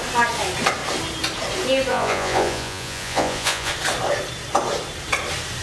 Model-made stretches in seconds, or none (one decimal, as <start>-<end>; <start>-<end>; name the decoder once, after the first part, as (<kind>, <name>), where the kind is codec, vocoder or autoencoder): 1.9-3.7 (vocoder, Vocos)